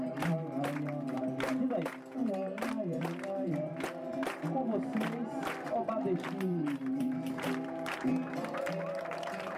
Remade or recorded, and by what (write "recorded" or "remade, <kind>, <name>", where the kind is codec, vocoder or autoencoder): remade, vocoder, BigVGAN v2